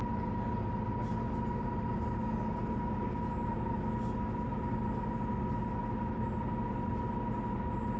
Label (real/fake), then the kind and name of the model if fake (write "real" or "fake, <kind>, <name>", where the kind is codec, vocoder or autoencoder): real